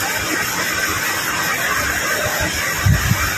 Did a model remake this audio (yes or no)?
no